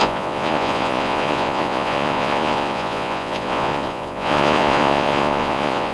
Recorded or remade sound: remade